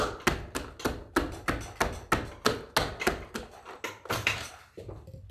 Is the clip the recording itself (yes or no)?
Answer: yes